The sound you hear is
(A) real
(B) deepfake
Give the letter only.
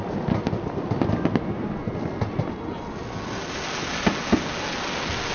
A